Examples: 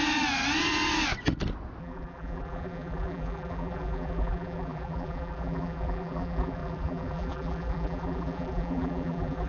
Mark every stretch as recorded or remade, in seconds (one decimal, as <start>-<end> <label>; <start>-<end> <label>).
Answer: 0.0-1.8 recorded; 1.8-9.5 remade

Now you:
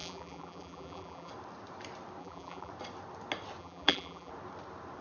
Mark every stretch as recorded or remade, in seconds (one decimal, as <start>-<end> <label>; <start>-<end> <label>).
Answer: 0.0-1.3 remade; 1.3-2.2 recorded; 2.2-2.7 remade; 2.7-3.6 recorded; 3.6-4.3 remade; 4.3-5.0 recorded

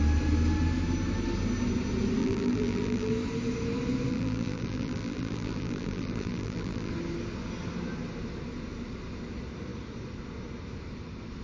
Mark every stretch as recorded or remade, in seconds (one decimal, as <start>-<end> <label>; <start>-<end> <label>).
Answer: 0.0-2.2 recorded; 2.2-3.1 remade; 3.1-4.1 recorded; 4.1-6.9 remade; 6.9-11.4 recorded

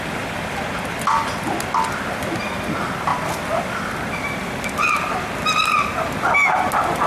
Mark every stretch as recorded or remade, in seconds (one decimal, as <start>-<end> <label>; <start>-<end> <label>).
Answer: 0.0-7.1 recorded

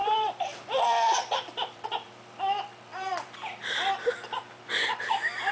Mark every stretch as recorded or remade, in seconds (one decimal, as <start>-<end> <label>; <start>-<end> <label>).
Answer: 0.0-2.4 remade; 2.4-2.9 recorded; 2.9-4.4 remade; 4.4-5.5 recorded